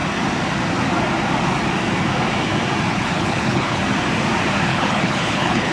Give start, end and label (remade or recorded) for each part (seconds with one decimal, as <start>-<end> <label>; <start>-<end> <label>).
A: 0.0-2.9 recorded; 2.9-3.8 remade; 3.8-4.7 recorded; 4.7-5.7 remade